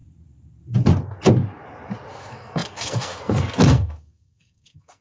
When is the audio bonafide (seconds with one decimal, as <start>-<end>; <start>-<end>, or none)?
0.0-2.1